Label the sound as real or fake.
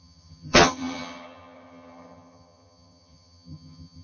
fake